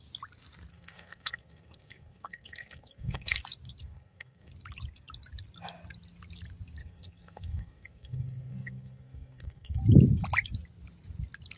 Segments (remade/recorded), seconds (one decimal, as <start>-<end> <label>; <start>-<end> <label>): 0.0-0.7 recorded; 0.7-3.4 remade; 3.4-3.8 recorded; 3.8-4.5 remade; 4.5-6.8 recorded; 6.8-9.8 remade; 9.8-11.6 recorded

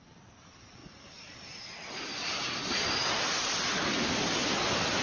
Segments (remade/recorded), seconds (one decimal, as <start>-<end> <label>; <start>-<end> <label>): 0.0-5.0 recorded

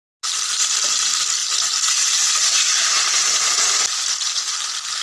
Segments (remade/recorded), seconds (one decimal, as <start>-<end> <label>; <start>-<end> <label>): 0.0-5.0 recorded